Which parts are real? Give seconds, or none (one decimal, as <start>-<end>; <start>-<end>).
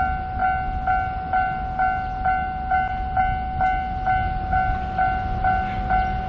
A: 0.0-6.3